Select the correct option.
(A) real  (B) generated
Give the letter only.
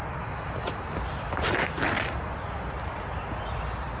A